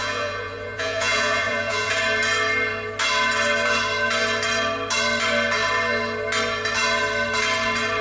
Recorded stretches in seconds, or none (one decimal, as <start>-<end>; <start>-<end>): 1.9-8.0